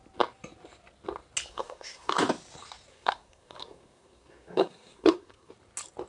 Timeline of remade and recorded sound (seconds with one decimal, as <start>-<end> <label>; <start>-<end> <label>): 0.0-1.5 recorded; 1.5-2.2 remade; 2.2-2.9 recorded; 2.9-5.5 remade; 5.5-6.1 recorded